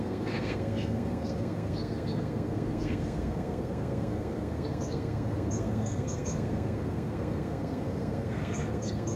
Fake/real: fake